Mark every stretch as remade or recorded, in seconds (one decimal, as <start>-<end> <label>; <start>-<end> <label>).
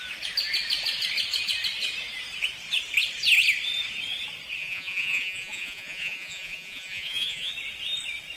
0.0-4.6 recorded; 4.6-7.5 remade; 7.5-8.4 recorded